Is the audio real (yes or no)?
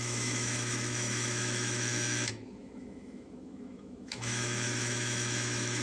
no